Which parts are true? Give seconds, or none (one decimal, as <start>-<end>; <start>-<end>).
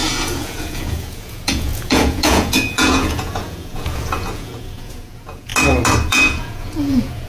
5.5-6.1